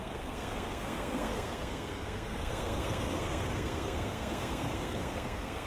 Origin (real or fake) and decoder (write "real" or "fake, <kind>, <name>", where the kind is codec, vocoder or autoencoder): fake, codec, SNAC